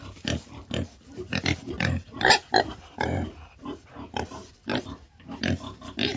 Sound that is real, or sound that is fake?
fake